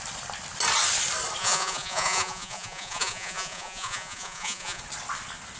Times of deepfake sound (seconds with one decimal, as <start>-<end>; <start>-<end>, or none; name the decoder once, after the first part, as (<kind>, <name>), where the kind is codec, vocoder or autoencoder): 1.4-4.8 (vocoder, Vocos)

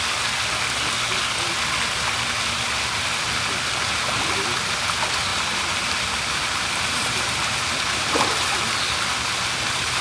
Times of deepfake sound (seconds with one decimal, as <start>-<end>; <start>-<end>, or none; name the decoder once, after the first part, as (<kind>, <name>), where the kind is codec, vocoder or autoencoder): 5.3-7.3 (vocoder, BigVGAN v2)

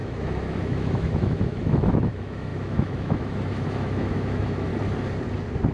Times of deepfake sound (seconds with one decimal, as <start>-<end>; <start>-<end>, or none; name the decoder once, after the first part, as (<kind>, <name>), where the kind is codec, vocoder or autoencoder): 0.0-4.7 (autoencoder, DAC-VAE)

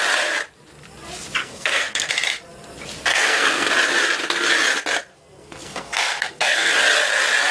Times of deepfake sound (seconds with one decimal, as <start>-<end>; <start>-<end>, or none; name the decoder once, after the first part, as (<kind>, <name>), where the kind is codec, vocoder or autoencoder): 1.4-2.1 (codec, SNAC); 3.1-3.7; 5.1-6.7